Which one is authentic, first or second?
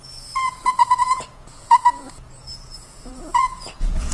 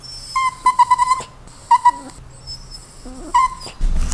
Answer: second